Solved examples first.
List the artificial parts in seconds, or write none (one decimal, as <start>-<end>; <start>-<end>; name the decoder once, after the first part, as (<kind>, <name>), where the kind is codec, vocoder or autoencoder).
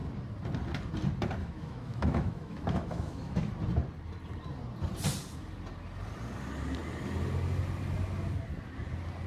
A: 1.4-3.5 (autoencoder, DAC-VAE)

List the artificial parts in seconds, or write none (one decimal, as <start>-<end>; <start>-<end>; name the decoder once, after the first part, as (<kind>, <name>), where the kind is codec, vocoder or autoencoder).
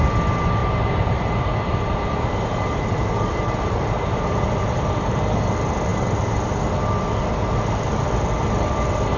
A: 0.6-5.4 (vocoder, BigVGAN v2); 5.9-6.6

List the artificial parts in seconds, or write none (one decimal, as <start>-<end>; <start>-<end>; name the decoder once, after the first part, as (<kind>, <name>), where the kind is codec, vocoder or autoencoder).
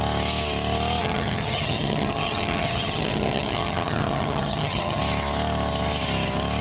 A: 1.0-5.0 (vocoder, HiFi-GAN)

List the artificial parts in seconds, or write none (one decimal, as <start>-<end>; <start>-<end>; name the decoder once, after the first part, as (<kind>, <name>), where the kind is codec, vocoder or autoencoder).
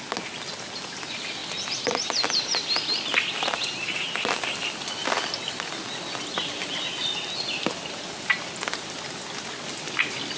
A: none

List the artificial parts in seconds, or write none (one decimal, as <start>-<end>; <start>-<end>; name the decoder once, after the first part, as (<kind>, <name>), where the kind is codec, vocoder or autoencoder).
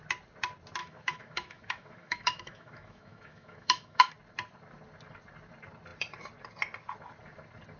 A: 0.8-4.1 (autoencoder, DAC-VAE)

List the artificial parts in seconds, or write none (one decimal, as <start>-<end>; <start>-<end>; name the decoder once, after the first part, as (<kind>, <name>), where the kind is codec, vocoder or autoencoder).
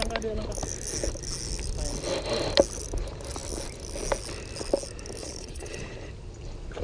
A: 5.2-5.8 (vocoder, Vocos)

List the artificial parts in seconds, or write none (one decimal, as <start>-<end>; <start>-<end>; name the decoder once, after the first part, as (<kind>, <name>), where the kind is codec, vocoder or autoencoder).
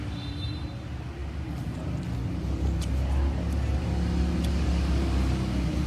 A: none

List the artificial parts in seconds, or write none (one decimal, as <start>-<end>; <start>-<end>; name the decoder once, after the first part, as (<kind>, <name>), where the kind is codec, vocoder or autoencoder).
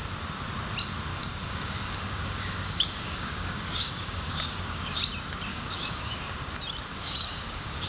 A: 1.1-5.0 (codec, DAC); 5.5-6.4; 6.9-7.9